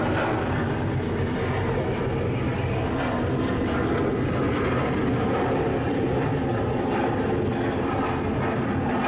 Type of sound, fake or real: real